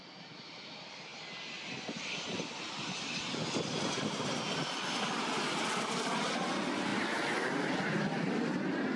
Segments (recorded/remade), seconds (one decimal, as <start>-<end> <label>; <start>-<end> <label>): 0.0-9.0 recorded